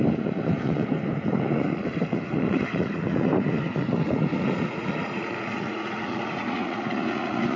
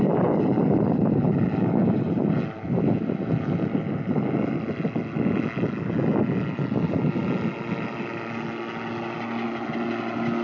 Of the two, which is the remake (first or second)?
first